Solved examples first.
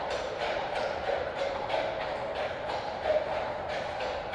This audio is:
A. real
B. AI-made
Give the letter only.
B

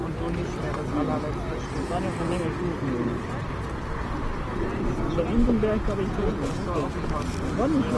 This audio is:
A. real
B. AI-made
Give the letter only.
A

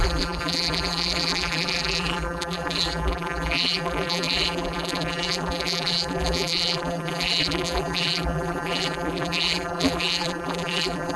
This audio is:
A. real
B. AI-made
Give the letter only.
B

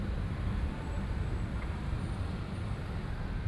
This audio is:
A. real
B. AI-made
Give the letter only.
B